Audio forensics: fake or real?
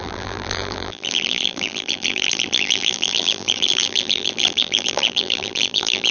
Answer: fake